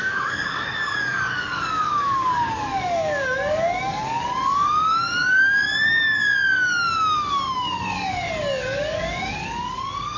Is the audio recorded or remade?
remade